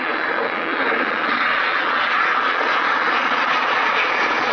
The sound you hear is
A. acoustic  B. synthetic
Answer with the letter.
B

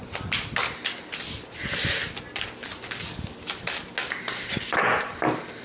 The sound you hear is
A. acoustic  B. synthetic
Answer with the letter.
A